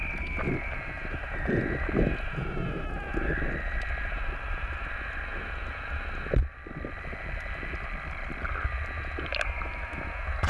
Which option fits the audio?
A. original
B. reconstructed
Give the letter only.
A